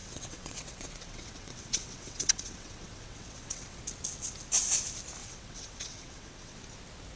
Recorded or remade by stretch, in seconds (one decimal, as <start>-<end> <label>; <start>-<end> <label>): 0.0-3.8 remade; 3.8-5.2 recorded; 5.2-6.6 remade; 6.6-7.2 recorded